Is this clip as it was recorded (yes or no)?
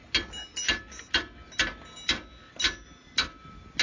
yes